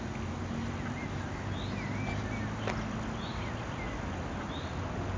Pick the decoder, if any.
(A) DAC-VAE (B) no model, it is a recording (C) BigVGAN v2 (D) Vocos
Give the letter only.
B